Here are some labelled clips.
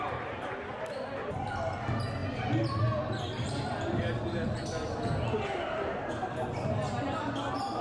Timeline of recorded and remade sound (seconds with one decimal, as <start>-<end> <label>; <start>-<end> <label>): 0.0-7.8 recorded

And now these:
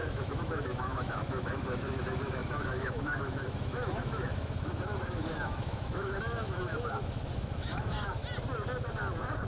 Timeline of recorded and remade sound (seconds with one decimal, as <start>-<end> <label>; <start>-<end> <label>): 0.0-8.2 remade; 8.2-9.5 recorded

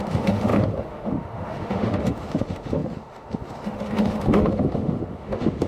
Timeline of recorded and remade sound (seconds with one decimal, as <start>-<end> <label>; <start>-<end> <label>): 0.0-5.7 remade

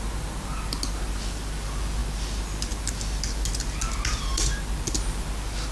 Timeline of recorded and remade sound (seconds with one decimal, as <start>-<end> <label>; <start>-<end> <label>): 0.0-5.7 recorded